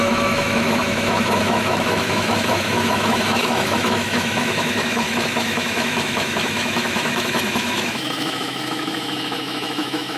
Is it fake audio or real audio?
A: fake